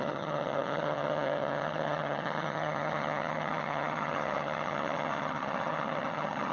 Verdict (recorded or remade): remade